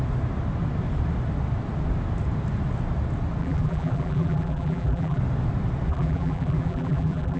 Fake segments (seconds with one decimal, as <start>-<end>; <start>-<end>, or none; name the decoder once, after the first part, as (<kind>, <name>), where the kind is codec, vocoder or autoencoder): 3.4-5.2 (vocoder, BigVGAN v2); 5.9-7.4